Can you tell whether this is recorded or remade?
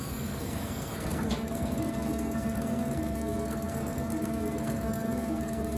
remade